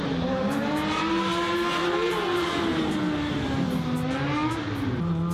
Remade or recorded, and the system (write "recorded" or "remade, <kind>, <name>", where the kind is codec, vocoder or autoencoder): recorded